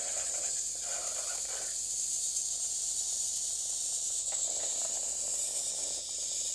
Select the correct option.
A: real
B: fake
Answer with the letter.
A